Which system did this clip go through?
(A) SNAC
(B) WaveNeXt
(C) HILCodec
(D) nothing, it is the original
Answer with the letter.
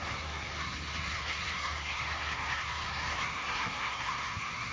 A